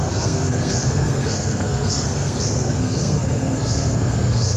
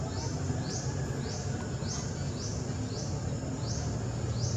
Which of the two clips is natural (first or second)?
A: second